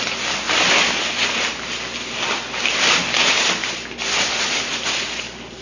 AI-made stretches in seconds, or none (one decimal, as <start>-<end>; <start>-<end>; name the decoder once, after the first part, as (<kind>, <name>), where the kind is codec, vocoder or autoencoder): none